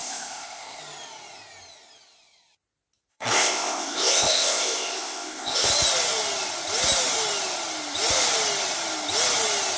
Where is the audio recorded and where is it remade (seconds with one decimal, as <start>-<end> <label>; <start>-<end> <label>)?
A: 0.0-0.8 remade; 0.8-3.1 recorded; 3.1-5.7 remade; 5.7-9.8 recorded